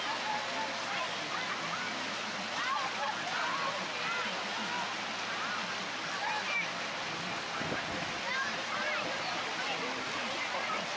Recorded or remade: recorded